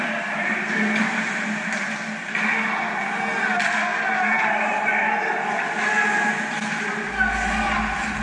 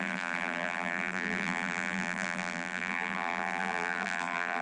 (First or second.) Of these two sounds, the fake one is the second